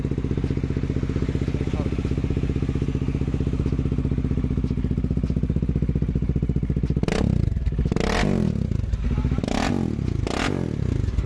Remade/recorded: recorded